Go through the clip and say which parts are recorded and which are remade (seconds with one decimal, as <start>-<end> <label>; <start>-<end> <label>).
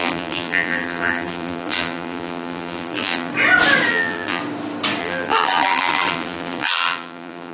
0.0-3.3 remade; 3.3-3.9 recorded; 3.9-4.4 remade; 4.4-5.0 recorded; 5.0-7.5 remade